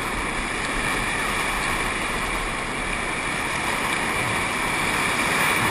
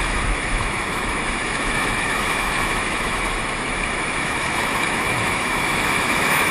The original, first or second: first